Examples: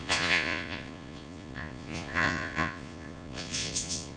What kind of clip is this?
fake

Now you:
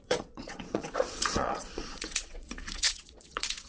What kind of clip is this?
fake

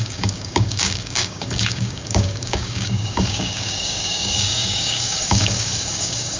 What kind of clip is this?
fake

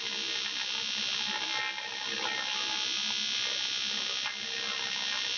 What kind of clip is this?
real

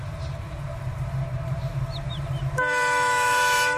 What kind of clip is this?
fake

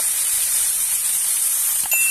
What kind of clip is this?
fake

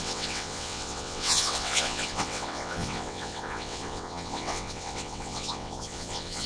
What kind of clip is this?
fake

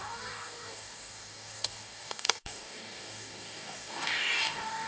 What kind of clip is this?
fake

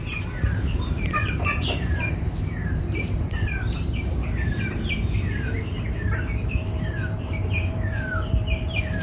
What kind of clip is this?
fake